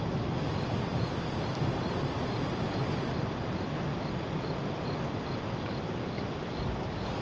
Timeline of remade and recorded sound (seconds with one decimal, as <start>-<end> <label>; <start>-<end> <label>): 0.0-7.2 recorded